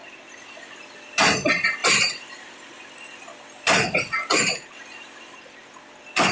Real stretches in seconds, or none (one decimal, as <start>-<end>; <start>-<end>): 0.0-1.8; 2.8-6.3